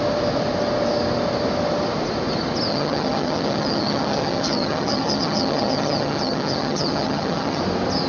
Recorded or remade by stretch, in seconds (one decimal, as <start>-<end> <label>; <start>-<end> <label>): 0.0-2.7 recorded; 2.7-7.6 remade; 7.6-8.1 recorded